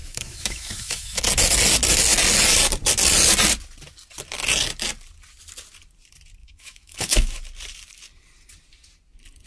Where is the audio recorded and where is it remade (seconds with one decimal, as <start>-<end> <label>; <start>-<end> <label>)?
0.0-1.2 remade; 1.2-6.4 recorded; 6.4-7.4 remade; 7.4-9.5 recorded